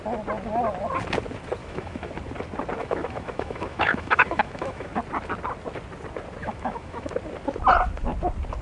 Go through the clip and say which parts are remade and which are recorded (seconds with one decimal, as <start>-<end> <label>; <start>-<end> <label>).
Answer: 0.0-1.6 recorded; 1.6-2.1 remade; 2.1-2.8 recorded; 2.8-4.9 remade; 4.9-6.4 recorded; 6.4-7.1 remade; 7.1-8.6 recorded